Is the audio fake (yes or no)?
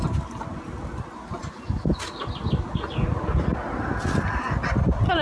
no